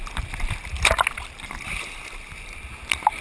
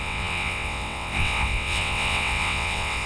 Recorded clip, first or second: first